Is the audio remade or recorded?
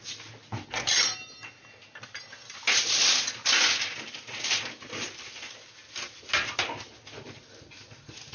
recorded